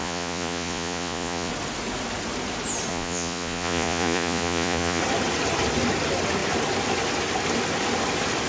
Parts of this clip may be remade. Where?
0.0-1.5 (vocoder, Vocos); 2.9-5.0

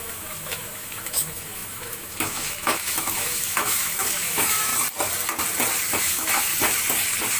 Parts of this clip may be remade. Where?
0.0-4.7 (autoencoder, DAC-VAE); 6.0-6.5

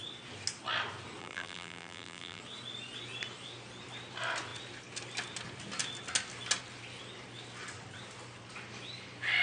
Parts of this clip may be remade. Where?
1.2-2.4 (vocoder, BigVGAN v2)

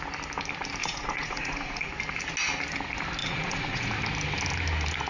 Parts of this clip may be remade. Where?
0.8-1.9 (vocoder, Vocos); 3.2-3.9

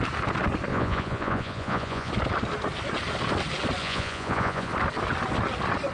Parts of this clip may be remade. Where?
0.7-2.1 (vocoder, Vocos); 3.8-4.7

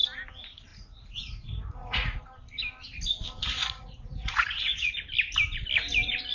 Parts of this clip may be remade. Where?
0.7-2.2 (vocoder, Vocos); 3.6-4.9

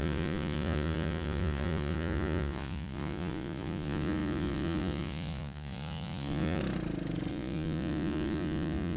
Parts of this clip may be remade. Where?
0.0-6.6 (vocoder, Vocos); 7.3-9.0

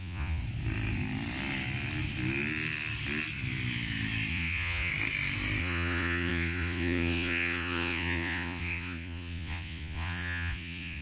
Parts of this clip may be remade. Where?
0.0-0.4 (vocoder, Vocos); 4.3-4.9; 5.6-11.0